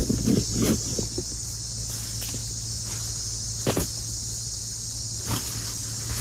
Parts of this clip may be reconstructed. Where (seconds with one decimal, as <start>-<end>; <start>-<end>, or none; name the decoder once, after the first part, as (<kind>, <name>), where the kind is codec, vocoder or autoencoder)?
0.0-1.3 (vocoder, BigVGAN v2)